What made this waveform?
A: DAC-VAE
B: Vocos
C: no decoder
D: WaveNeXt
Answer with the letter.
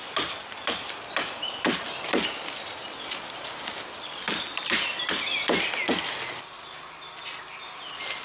C